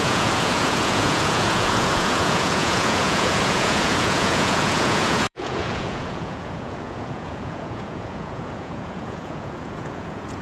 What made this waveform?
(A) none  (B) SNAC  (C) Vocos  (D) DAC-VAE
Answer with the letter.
C